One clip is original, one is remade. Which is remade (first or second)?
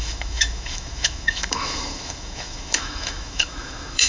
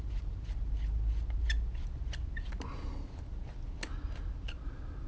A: first